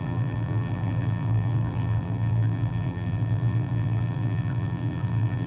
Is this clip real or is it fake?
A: fake